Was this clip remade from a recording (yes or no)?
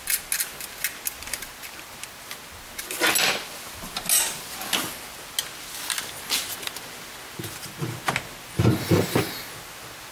no